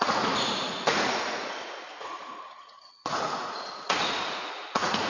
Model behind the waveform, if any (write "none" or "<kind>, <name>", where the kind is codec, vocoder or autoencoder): vocoder, Vocos